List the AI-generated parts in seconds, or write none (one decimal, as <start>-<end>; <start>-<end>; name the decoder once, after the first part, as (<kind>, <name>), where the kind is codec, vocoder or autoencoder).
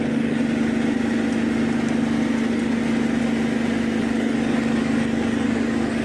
0.0-0.4 (codec, DAC); 4.0-6.0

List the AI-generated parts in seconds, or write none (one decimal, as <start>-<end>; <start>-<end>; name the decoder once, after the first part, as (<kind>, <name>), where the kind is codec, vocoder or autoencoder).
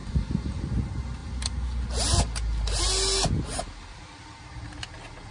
none